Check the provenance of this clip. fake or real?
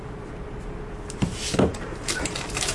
fake